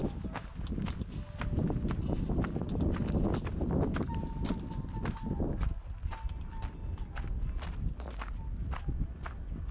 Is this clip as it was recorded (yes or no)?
yes